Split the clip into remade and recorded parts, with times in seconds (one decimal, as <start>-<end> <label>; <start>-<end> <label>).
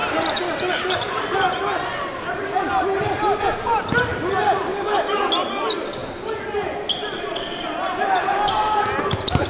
0.0-4.7 recorded; 4.7-5.3 remade; 5.3-9.5 recorded